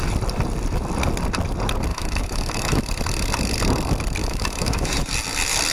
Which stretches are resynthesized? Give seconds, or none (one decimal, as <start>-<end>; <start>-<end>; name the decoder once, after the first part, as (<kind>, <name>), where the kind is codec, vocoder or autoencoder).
1.9-2.8 (autoencoder, DAC-VAE); 4.2-4.9